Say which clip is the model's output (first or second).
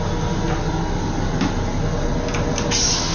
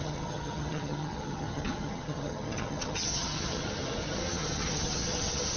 second